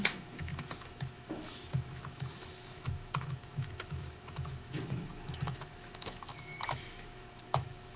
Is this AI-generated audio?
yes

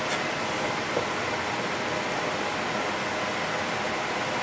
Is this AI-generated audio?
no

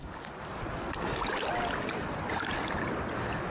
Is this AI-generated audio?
no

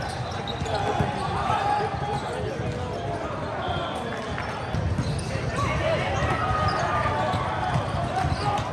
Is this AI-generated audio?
no